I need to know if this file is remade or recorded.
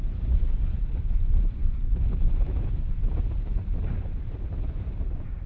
remade